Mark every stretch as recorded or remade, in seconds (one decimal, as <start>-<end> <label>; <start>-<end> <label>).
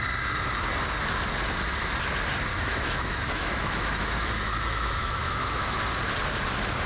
0.0-2.5 recorded; 2.5-5.8 remade; 5.8-6.9 recorded